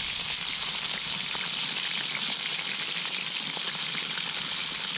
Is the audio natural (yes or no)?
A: yes